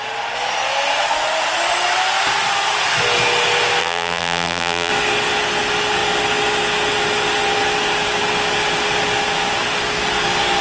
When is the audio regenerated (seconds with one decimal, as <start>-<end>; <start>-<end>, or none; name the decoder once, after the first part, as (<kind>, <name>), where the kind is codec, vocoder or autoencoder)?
3.8-4.9 (vocoder, BigVGAN v2)

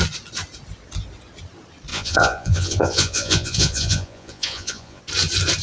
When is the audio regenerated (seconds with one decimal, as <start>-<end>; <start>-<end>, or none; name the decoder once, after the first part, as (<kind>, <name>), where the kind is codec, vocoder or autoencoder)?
1.9-5.0 (vocoder, Vocos)

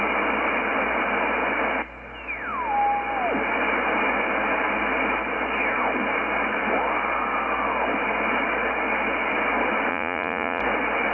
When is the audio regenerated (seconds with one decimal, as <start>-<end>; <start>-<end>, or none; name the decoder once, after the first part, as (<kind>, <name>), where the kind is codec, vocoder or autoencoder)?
9.9-10.6 (vocoder, Vocos)

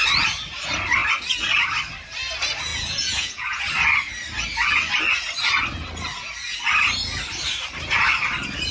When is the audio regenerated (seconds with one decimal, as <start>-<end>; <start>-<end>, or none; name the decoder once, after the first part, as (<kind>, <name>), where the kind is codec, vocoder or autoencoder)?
2.7-3.6 (vocoder, Vocos)

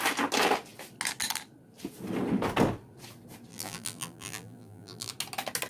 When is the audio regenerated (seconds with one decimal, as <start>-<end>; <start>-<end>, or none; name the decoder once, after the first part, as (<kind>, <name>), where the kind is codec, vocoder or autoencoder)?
3.5-5.1 (vocoder, BigVGAN v2)